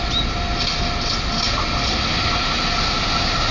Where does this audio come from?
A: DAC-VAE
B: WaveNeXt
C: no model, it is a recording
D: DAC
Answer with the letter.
C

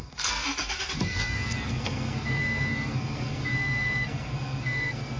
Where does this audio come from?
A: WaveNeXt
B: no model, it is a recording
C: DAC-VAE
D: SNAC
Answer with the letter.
D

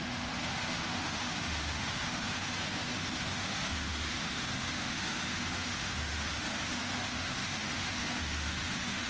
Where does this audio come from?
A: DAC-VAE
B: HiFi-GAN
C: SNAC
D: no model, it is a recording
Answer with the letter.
A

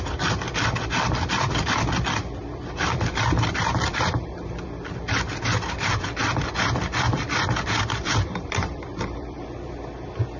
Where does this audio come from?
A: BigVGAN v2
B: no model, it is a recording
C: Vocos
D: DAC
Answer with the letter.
A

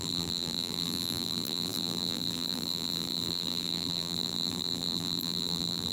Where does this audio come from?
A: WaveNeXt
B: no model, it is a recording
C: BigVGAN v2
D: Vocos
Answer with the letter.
C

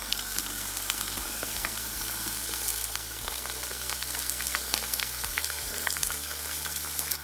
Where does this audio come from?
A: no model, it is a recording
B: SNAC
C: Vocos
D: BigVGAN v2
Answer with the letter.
B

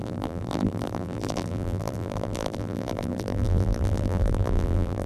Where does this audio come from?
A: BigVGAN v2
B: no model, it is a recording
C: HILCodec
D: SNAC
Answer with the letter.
A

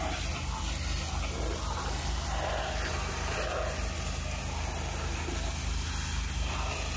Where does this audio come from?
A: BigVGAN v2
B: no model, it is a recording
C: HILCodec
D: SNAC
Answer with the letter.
B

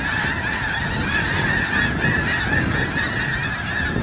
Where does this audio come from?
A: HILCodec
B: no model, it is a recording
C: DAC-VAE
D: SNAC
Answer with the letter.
B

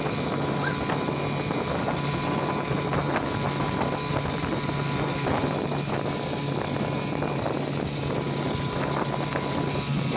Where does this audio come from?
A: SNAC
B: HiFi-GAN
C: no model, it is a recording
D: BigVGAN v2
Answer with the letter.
C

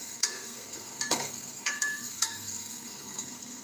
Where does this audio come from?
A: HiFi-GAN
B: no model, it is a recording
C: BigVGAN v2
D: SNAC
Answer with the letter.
D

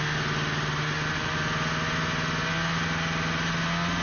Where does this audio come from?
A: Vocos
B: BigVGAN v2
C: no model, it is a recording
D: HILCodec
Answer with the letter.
C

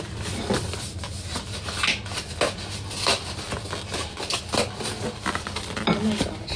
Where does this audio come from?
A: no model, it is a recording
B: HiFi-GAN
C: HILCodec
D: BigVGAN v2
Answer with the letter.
A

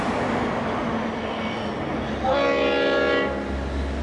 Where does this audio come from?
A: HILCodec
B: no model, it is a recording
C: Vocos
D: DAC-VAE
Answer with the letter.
B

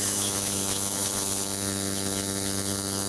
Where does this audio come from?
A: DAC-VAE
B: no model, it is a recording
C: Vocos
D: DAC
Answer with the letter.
A